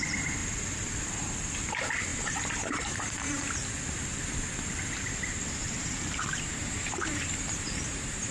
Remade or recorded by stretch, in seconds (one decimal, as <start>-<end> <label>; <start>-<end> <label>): 0.0-0.4 recorded; 0.4-1.0 remade; 1.0-2.1 recorded; 2.1-3.7 remade; 3.7-5.6 recorded; 5.6-8.3 remade